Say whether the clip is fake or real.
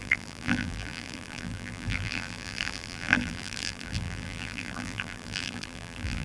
fake